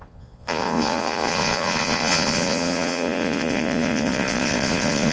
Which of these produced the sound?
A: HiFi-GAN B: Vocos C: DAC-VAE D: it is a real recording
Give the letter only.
B